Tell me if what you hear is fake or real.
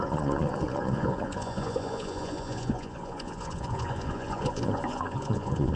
fake